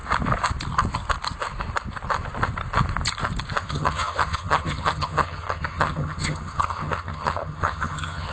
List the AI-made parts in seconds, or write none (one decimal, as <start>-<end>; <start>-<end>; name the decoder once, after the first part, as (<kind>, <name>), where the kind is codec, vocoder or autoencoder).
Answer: 3.6-8.3 (vocoder, HiFi-GAN)